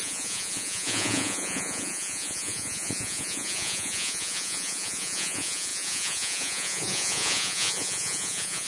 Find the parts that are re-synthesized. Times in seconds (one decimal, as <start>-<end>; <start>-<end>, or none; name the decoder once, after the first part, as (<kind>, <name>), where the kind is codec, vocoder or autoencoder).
0.0-8.7 (vocoder, Vocos)